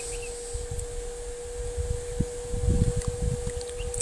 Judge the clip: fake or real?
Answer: real